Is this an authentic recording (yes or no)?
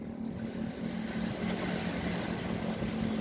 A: yes